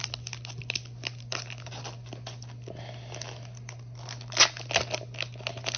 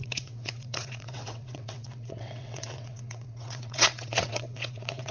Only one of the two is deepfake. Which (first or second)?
second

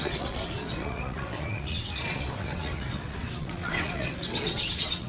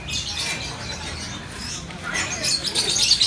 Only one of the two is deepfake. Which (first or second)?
first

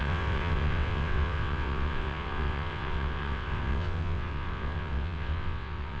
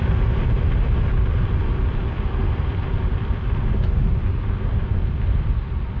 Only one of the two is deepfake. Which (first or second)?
first